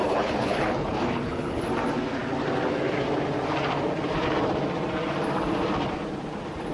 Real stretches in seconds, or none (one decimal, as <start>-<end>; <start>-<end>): 1.6-6.7